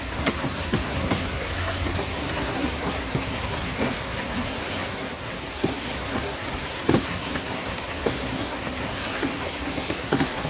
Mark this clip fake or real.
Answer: fake